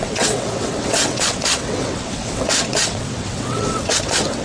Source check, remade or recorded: remade